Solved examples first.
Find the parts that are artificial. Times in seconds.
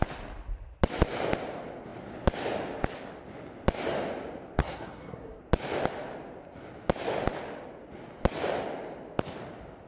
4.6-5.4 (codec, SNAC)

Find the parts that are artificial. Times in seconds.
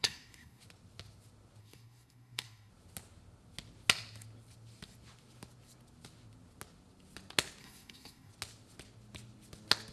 0.0-0.6 (codec, SNAC); 1.6-2.7; 7.6-8.3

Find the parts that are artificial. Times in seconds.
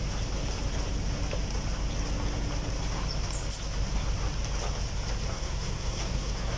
5.3-6.6 (codec, SNAC)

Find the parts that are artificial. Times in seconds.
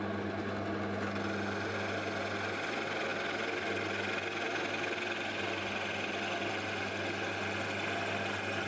none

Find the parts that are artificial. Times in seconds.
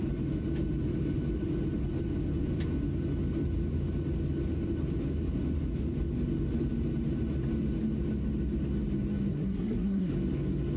9.3-10.1 (codec, SNAC)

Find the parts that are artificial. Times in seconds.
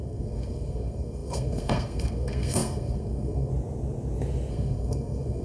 0.0-3.5 (codec, SNAC); 4.5-5.4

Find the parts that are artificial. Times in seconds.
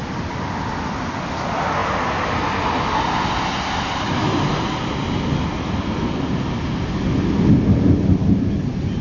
none